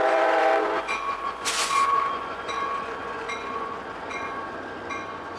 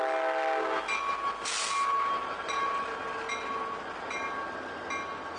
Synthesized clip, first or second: first